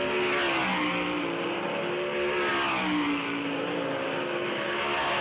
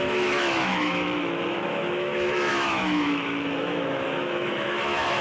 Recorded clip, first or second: first